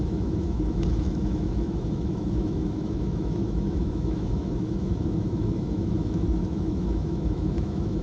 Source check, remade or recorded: remade